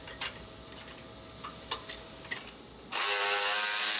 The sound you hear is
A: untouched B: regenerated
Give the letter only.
A